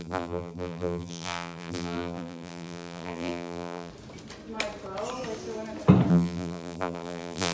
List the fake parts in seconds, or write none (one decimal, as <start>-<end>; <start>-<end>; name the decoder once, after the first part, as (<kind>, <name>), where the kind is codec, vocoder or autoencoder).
0.0-3.9 (vocoder, BigVGAN v2); 6.1-7.5